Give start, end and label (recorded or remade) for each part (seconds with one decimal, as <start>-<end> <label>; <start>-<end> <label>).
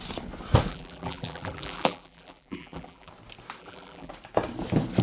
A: 0.0-0.7 recorded; 0.7-3.1 remade; 3.1-3.6 recorded; 3.6-4.1 remade; 4.1-5.0 recorded